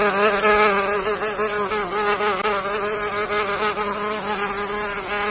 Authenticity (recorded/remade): recorded